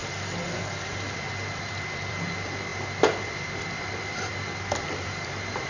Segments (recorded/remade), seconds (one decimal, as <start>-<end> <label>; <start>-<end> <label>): 0.0-1.1 recorded; 1.1-5.7 remade